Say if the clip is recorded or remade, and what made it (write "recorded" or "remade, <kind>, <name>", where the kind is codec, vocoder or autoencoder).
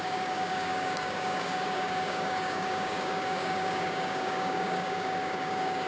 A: remade, codec, DAC